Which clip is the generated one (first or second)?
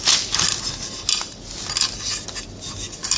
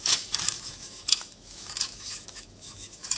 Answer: second